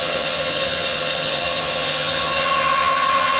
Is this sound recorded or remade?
remade